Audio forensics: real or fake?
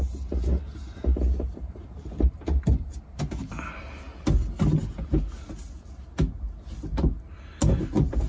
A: real